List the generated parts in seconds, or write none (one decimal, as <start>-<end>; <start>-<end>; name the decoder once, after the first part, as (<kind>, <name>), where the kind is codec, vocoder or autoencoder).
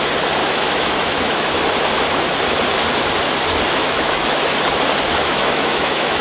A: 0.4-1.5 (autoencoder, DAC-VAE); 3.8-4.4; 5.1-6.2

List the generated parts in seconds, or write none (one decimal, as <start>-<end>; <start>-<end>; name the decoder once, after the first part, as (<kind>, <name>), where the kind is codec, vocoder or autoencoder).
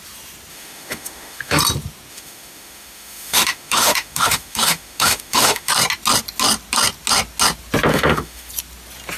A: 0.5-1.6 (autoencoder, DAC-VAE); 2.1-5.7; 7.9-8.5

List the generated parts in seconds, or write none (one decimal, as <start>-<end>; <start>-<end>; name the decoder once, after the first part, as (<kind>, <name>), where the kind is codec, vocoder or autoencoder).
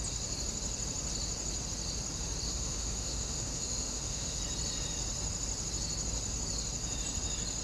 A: 2.5-4.4 (autoencoder, DAC-VAE)